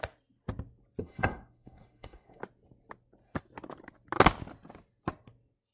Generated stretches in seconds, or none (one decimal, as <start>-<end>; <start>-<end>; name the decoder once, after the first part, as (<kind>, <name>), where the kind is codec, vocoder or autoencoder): 1.0-2.4 (codec, SNAC)